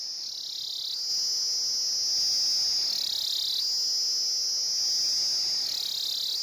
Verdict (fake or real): real